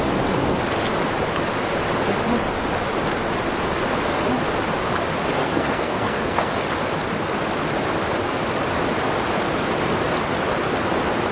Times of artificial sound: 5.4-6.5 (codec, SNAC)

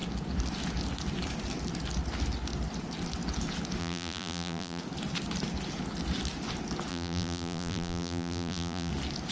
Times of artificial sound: 3.8-4.8 (vocoder, BigVGAN v2); 6.9-8.9

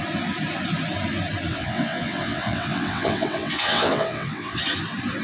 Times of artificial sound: 1.5-4.6 (vocoder, WaveNeXt)

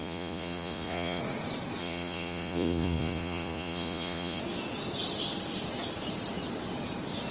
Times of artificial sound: 0.0-1.2 (vocoder, Vocos); 1.8-4.4

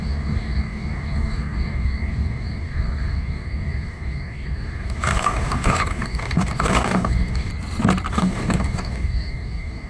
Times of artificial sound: 0.0-7.5 (codec, DAC); 8.1-9.9